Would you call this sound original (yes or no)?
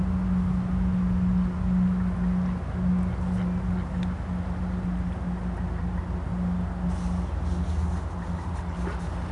yes